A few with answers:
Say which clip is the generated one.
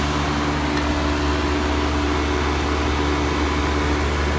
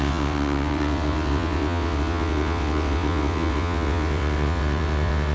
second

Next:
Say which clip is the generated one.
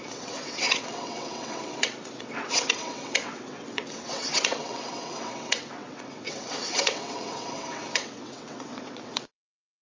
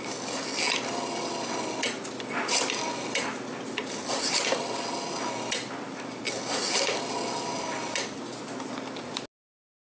first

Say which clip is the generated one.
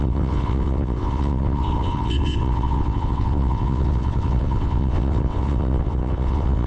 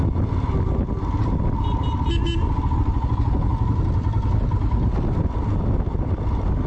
first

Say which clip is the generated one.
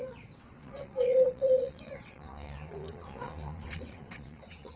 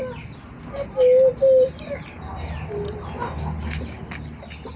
first